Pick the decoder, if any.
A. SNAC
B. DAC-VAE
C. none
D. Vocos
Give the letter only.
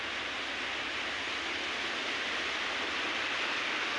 C